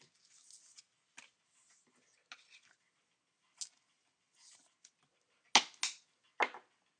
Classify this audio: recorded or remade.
recorded